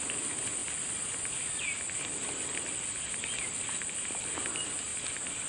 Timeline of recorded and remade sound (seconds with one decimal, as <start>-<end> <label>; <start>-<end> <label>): 0.0-0.6 remade; 0.6-3.9 recorded; 3.9-5.5 remade